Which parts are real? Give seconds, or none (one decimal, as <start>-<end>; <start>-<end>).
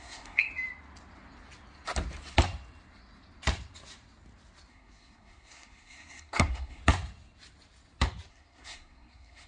0.5-4.7; 6.8-8.3